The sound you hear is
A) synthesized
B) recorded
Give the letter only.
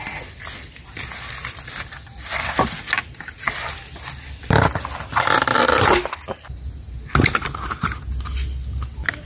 B